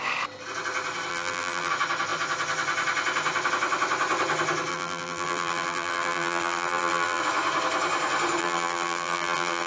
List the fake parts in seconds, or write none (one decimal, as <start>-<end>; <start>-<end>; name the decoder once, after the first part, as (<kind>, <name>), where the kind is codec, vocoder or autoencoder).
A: 1.1-1.7 (vocoder, BigVGAN v2); 4.7-7.2; 8.4-9.7